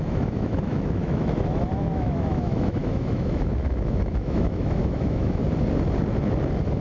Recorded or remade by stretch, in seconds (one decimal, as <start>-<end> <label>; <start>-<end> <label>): 0.0-5.4 remade; 5.4-6.8 recorded